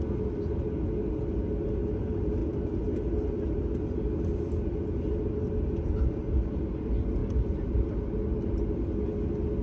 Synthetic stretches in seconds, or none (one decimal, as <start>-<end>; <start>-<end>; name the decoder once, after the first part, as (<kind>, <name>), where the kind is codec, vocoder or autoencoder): none